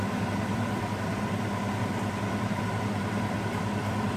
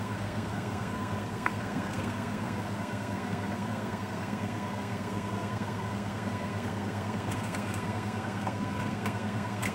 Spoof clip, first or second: second